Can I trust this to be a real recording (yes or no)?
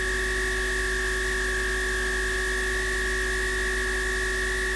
yes